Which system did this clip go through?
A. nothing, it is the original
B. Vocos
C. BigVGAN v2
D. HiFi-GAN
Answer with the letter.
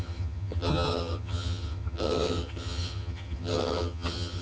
D